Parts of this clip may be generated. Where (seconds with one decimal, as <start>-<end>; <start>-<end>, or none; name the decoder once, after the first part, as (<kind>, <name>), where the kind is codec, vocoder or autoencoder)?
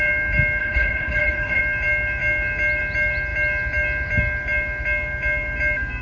0.6-1.6 (codec, HILCodec)